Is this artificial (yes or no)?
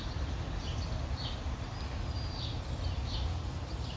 no